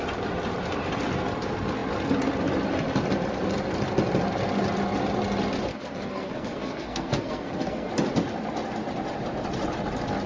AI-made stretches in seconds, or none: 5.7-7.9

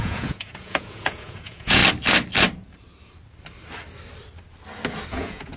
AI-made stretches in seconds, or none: 0.0-1.8; 5.1-5.6